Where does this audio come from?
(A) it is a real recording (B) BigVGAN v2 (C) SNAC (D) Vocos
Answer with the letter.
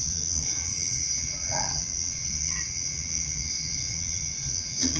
D